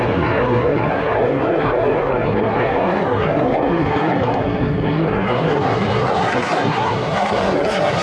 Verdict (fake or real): fake